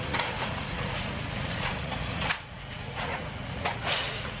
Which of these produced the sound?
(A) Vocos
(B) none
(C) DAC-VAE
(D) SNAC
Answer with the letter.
A